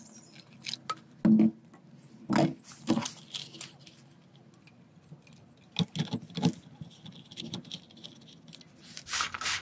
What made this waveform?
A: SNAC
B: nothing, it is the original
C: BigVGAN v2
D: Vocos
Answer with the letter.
B